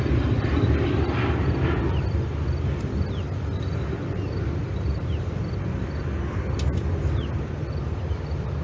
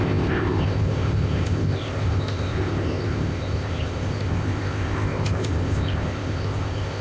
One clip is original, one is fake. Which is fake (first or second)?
second